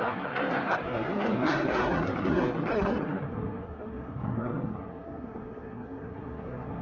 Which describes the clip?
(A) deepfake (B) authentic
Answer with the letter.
A